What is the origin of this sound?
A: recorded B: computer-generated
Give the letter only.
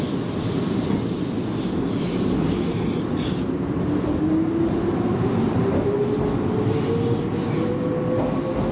A